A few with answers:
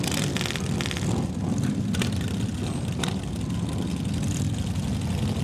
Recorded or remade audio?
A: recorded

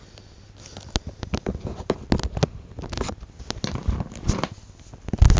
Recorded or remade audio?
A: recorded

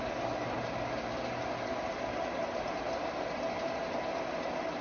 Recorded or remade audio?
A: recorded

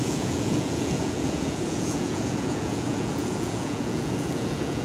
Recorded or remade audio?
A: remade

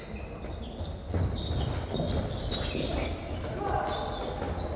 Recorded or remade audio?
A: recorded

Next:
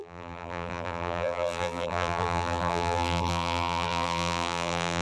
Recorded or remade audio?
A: remade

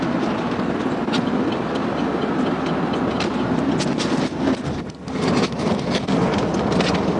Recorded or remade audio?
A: recorded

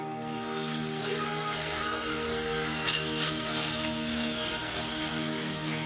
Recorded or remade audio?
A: remade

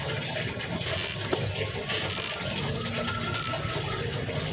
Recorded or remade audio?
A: recorded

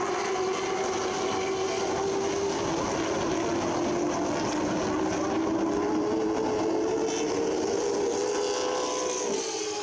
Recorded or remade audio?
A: recorded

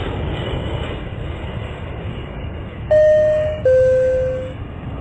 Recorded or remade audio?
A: remade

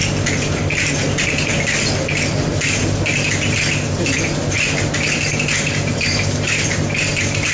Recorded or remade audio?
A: recorded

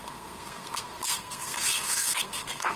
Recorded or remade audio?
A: remade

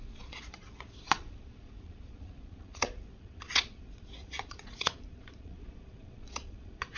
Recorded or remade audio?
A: remade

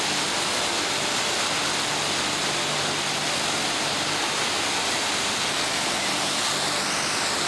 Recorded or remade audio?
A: recorded